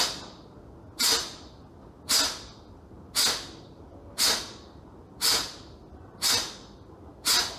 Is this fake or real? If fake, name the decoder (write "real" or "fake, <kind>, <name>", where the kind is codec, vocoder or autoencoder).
real